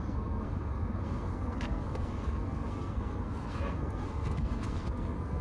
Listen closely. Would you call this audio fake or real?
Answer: fake